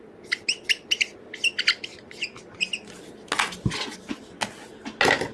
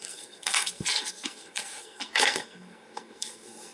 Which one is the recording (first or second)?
first